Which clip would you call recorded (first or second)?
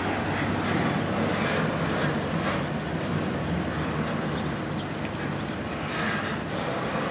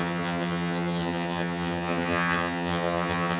first